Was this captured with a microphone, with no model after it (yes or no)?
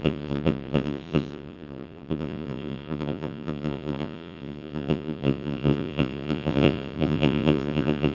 no